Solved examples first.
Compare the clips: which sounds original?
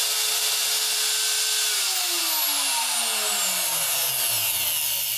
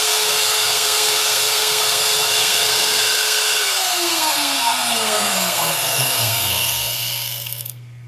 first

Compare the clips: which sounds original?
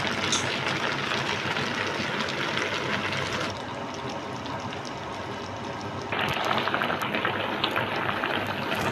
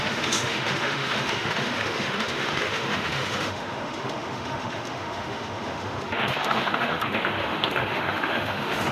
first